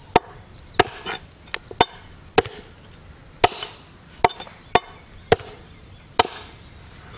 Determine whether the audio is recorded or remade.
recorded